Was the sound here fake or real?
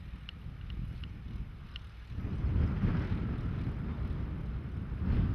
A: real